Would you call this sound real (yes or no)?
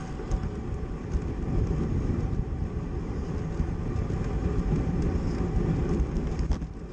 yes